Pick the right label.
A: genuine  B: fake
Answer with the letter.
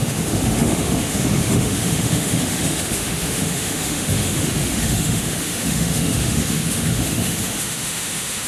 B